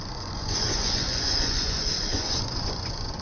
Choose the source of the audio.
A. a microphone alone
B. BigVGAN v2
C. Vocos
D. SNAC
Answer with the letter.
C